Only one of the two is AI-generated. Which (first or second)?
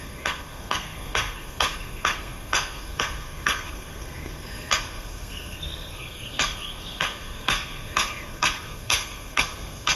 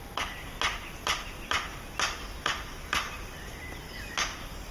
first